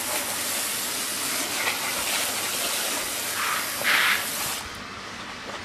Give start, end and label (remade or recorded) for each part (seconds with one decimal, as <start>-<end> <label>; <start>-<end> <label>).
0.0-5.6 recorded